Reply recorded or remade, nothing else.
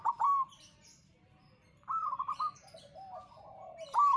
remade